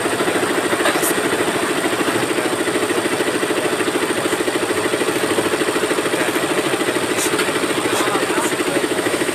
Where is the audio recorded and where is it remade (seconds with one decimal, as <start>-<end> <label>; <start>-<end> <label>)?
0.0-8.7 recorded; 8.7-9.3 remade